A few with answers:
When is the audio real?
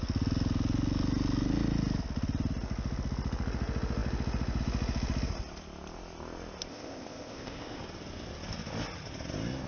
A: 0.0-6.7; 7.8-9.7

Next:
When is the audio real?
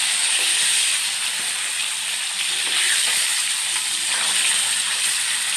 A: 0.6-5.6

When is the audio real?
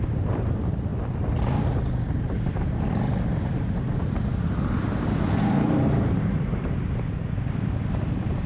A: 0.9-2.2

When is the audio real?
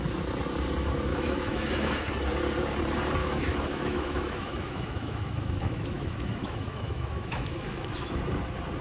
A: 0.0-1.1; 2.1-3.2; 8.1-8.8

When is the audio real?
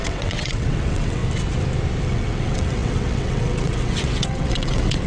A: 1.2-2.0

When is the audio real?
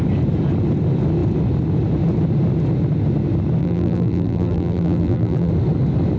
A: 0.0-3.6; 5.5-6.2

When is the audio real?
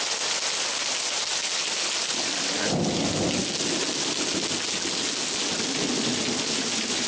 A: 0.0-7.1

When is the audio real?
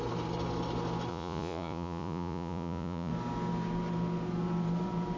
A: 0.0-1.1; 3.1-5.2